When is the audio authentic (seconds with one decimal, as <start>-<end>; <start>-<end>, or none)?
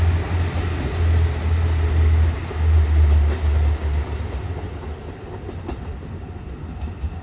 0.0-7.2